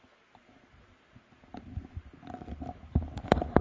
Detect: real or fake real